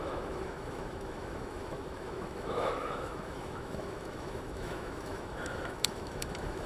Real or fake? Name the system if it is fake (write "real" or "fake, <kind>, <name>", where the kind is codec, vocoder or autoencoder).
fake, autoencoder, DAC-VAE